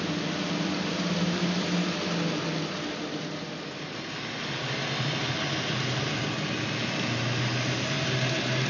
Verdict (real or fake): real